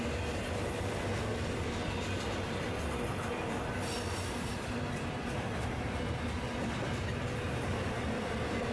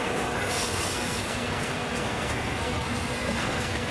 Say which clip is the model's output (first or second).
second